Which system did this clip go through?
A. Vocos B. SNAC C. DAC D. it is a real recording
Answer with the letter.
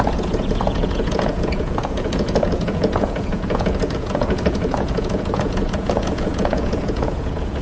A